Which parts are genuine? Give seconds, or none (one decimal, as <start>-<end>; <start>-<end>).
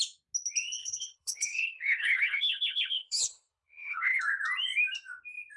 0.0-0.8; 4.2-5.6